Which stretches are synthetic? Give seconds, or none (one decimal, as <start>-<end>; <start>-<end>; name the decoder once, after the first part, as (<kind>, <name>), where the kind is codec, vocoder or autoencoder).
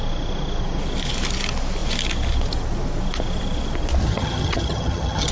4.0-5.3 (vocoder, HiFi-GAN)